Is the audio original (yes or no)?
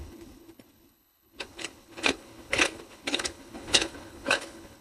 no